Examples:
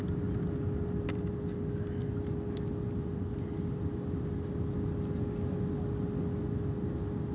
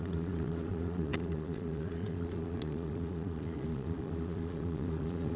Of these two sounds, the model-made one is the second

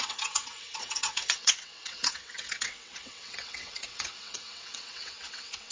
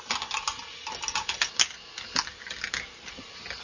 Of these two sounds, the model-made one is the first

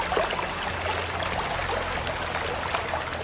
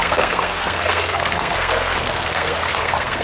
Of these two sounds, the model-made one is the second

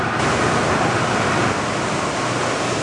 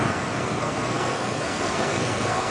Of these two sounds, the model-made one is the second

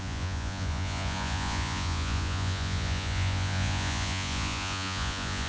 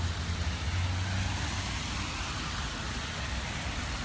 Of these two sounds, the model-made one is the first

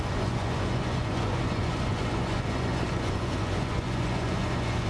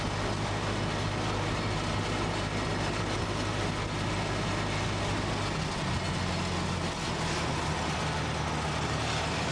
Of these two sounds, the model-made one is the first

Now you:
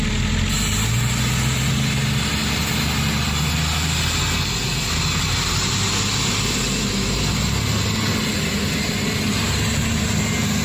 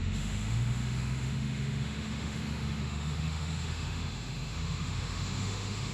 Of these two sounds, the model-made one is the second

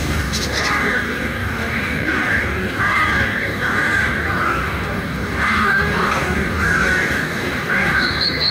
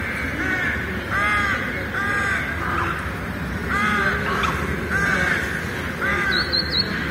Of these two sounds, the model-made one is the first